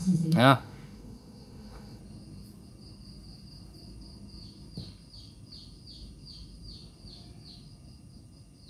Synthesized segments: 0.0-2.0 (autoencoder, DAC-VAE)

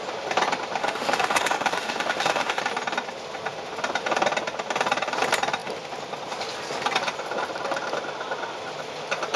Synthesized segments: 0.8-2.6 (autoencoder, DAC-VAE)

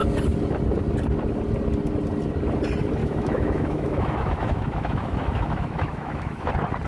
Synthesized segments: 3.0-6.5 (autoencoder, DAC-VAE)

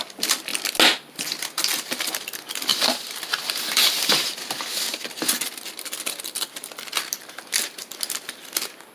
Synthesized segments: none

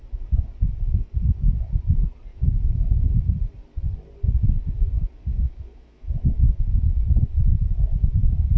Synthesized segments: 2.3-3.2 (autoencoder, DAC-VAE); 5.3-6.1

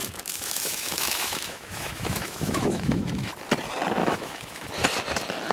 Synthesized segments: 0.0-3.3 (autoencoder, DAC-VAE); 4.0-4.7

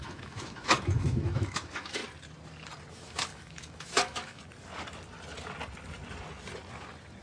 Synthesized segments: 0.0-2.0 (autoencoder, DAC-VAE); 2.9-4.4